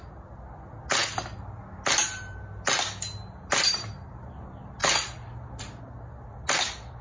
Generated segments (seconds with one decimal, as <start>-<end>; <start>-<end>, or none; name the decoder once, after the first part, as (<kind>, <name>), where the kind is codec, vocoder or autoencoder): none